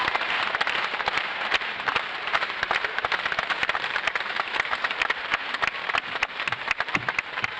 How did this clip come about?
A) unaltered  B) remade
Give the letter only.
B